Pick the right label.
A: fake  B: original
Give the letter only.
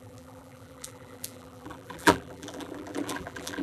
A